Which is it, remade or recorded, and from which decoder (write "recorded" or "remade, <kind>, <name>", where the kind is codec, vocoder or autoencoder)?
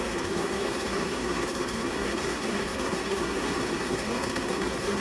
remade, codec, SNAC